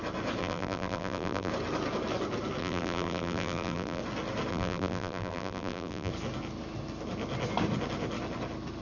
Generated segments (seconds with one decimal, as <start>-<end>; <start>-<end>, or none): 0.4-1.5; 2.6-4.0; 4.5-6.1